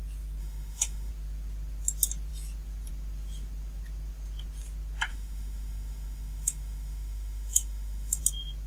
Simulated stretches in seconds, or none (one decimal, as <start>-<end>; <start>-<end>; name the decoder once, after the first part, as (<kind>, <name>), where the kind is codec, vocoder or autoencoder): 0.4-1.1 (autoencoder, DAC-VAE); 5.1-8.2